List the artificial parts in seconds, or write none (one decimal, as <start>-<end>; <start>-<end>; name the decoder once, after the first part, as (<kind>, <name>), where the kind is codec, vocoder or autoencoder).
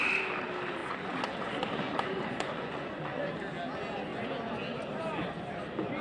0.8-3.2 (vocoder, Vocos)